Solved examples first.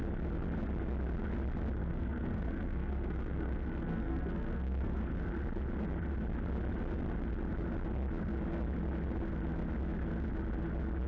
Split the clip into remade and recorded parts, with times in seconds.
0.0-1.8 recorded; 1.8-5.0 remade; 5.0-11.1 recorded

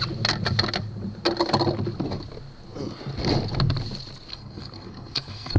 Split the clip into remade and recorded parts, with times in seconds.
0.0-4.3 recorded; 4.3-5.6 remade

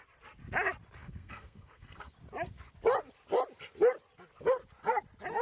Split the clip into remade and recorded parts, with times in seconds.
0.0-1.0 recorded; 1.0-2.1 remade; 2.1-5.4 recorded